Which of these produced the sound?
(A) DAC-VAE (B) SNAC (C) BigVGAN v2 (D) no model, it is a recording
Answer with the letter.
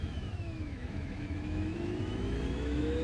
A